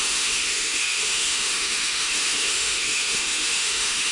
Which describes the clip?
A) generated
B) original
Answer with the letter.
A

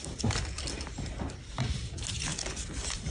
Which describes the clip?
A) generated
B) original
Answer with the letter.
B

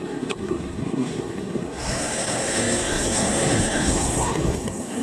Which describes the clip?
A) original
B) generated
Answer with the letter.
B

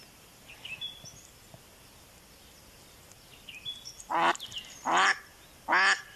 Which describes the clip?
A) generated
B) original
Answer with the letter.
B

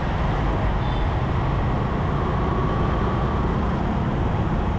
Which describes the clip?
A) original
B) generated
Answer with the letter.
A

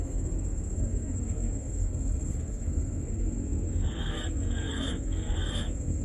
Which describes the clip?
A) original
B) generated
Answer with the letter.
B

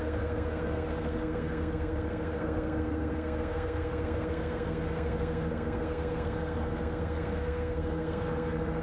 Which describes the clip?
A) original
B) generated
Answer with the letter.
B